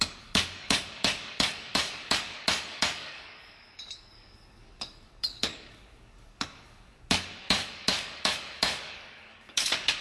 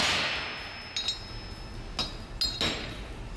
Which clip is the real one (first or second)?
second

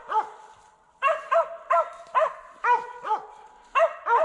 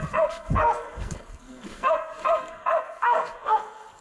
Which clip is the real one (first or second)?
first